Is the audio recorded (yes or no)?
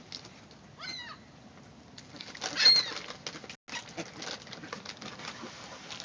yes